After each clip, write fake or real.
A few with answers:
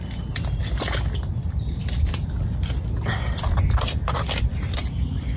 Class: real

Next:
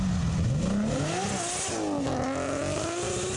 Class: real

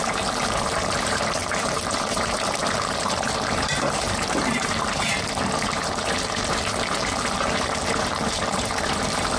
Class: fake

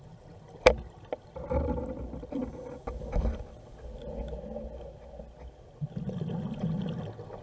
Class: real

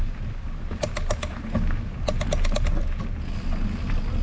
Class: real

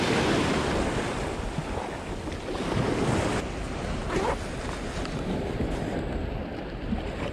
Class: real